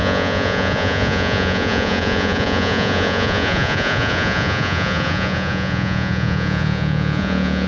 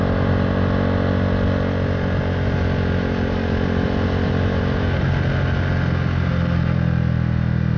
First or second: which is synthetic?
first